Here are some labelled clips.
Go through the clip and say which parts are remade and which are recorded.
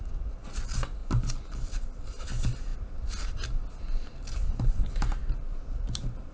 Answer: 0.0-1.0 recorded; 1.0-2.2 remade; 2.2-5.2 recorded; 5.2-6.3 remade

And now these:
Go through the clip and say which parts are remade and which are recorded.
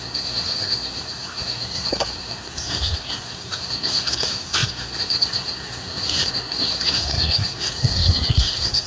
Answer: 0.0-8.9 remade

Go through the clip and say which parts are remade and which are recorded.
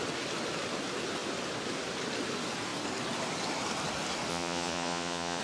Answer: 0.0-4.3 recorded; 4.3-5.4 remade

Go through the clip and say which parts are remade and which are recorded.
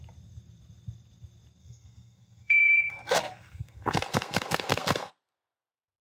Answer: 0.0-1.6 recorded; 1.6-5.1 remade; 5.1-6.0 recorded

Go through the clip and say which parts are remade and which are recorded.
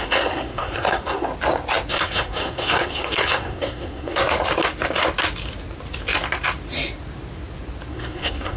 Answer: 0.0-1.3 remade; 1.3-1.9 recorded; 1.9-4.2 remade; 4.2-7.9 recorded; 7.9-8.6 remade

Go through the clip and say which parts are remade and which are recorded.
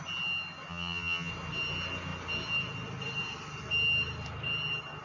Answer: 0.0-0.7 recorded; 0.7-1.3 remade; 1.3-5.0 recorded